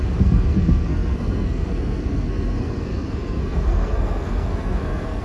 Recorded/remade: remade